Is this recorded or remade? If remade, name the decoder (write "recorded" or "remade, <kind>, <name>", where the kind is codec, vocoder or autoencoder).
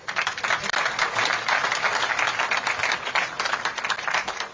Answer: recorded